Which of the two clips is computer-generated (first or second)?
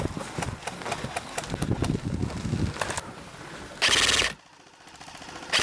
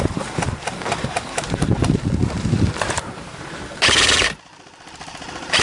second